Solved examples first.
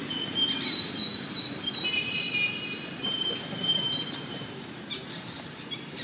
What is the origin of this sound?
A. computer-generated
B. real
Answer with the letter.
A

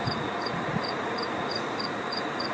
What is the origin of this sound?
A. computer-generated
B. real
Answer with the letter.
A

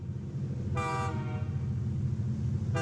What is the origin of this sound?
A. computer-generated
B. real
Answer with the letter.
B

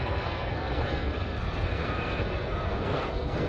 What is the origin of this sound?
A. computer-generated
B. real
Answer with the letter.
A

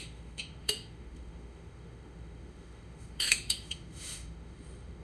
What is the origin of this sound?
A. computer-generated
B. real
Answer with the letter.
A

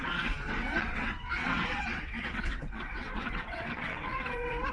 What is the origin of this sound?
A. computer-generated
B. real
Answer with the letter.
A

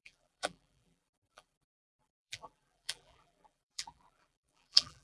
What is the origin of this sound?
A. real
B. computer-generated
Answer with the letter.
B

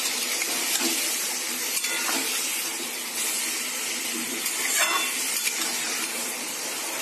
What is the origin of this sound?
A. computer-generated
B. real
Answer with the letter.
A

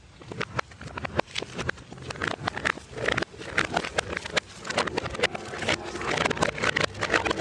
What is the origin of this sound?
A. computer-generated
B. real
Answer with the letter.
B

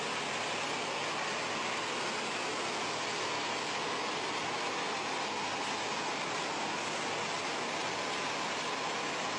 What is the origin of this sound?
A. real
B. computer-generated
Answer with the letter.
A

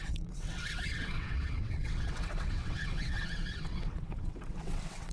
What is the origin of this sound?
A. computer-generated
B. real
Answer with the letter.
A